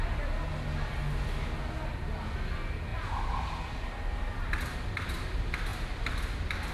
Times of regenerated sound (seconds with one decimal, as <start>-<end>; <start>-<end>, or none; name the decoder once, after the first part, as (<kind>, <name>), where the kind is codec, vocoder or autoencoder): none